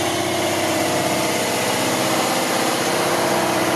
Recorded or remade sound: recorded